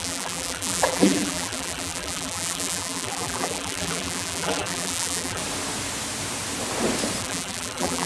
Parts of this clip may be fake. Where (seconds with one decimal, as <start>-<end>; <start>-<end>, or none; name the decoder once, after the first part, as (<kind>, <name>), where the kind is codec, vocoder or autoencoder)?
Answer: 0.0-5.4 (vocoder, BigVGAN v2); 7.2-8.1